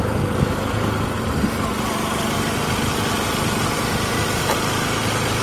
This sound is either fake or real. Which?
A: real